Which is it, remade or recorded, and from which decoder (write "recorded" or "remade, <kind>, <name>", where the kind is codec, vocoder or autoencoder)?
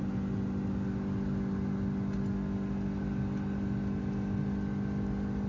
recorded